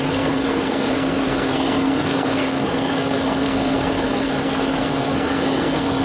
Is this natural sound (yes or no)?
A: no